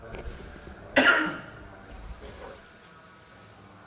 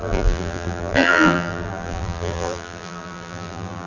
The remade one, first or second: second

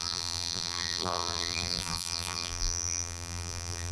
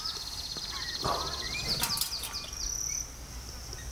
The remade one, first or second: first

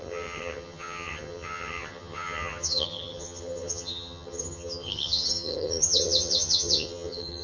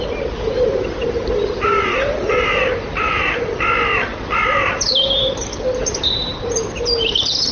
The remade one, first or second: first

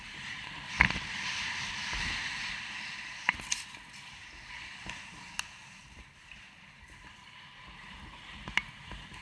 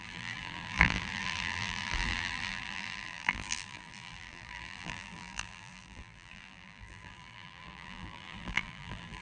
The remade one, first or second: second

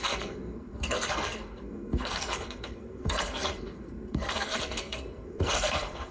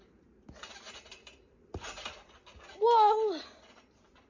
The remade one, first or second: first